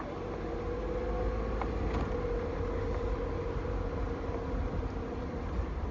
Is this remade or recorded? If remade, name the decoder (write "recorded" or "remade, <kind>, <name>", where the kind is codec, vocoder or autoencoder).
recorded